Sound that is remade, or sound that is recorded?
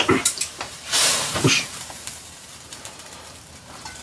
remade